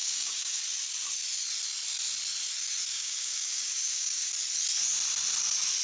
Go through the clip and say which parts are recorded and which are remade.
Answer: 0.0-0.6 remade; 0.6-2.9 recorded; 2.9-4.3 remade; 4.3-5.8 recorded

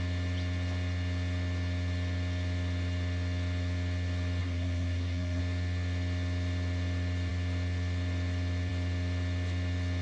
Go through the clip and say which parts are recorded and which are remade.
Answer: 0.0-4.4 recorded; 4.4-5.4 remade; 5.4-10.0 recorded